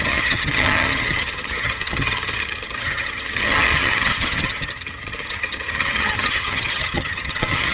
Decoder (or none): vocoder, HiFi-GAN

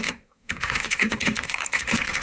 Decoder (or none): codec, SNAC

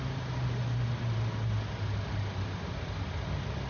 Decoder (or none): none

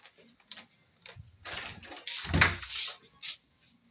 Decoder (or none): none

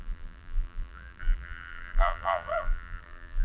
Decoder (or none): vocoder, BigVGAN v2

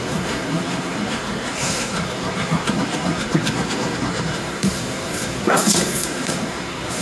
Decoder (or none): codec, SNAC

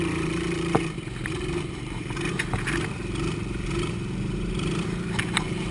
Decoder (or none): vocoder, BigVGAN v2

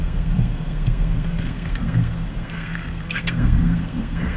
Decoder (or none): codec, SNAC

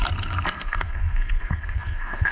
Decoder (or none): codec, SNAC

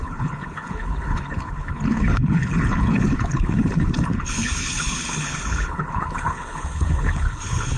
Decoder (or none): codec, HILCodec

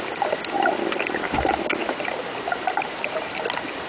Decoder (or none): none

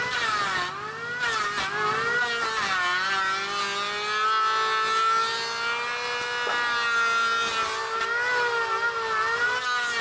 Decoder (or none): none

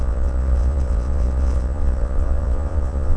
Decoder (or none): vocoder, Vocos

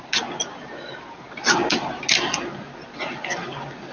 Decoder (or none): none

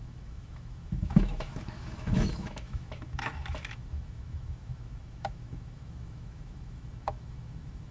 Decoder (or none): autoencoder, DAC-VAE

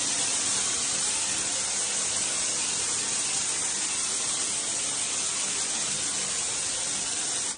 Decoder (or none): none